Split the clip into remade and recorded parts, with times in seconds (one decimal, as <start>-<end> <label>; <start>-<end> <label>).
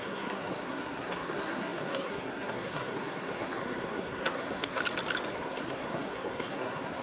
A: 0.0-4.8 remade; 4.8-5.3 recorded; 5.3-7.0 remade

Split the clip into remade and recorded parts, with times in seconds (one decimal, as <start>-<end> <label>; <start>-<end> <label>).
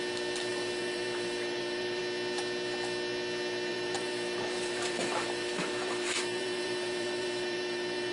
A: 0.0-0.5 recorded; 0.5-2.0 remade; 2.0-3.7 recorded; 3.7-8.1 remade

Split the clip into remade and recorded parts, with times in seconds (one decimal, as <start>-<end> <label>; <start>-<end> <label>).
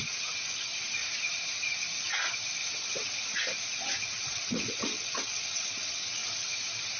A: 0.0-0.7 remade; 0.7-2.7 recorded; 2.7-3.3 remade; 3.3-4.0 recorded; 4.0-6.2 remade; 6.2-7.0 recorded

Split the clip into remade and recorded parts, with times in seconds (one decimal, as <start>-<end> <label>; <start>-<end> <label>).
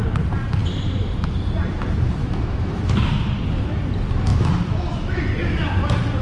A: 0.0-2.2 recorded; 2.2-3.0 remade; 3.0-4.3 recorded; 4.3-5.2 remade; 5.2-6.2 recorded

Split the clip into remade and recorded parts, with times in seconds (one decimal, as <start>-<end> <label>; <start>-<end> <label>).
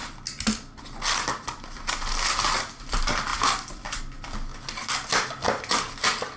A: 0.0-2.9 recorded; 2.9-4.5 remade; 4.5-6.4 recorded